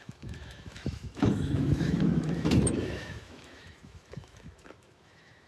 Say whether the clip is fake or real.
fake